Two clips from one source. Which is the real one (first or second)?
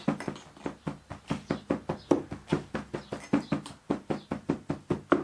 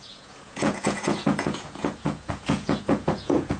first